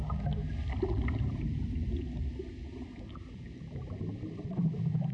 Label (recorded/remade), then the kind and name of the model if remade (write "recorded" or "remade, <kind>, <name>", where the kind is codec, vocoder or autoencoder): recorded